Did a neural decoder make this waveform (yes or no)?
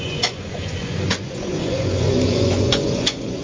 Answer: yes